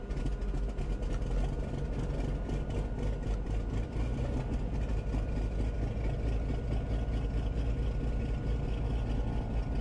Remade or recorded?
recorded